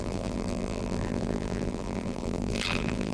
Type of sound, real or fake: fake